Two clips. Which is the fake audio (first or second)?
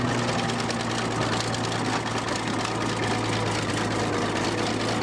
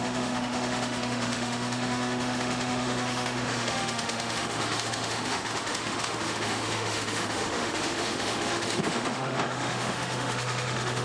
second